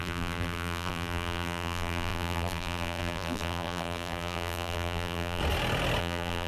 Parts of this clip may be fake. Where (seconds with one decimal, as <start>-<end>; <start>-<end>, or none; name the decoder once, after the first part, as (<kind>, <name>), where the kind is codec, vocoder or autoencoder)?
0.0-5.4 (vocoder, BigVGAN v2); 6.0-6.5